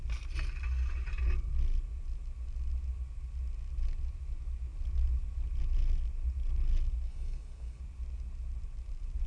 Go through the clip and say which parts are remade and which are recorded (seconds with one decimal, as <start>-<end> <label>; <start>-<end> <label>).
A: 0.0-7.1 recorded; 7.1-7.8 remade; 7.8-9.3 recorded